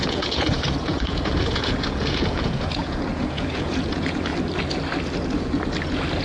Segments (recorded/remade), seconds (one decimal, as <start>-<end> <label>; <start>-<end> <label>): 0.0-4.3 remade; 4.3-6.2 recorded